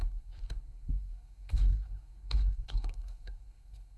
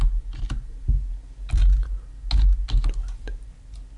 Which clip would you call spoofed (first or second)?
first